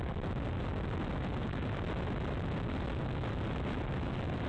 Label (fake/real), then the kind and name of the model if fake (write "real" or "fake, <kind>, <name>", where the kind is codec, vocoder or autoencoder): real